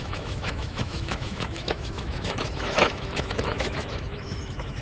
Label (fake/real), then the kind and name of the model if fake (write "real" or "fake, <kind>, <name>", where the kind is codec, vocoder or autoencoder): fake, autoencoder, DAC-VAE